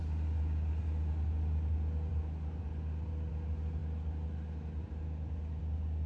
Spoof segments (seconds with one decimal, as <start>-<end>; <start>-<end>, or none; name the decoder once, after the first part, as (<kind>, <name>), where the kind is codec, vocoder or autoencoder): none